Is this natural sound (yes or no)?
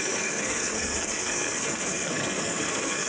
no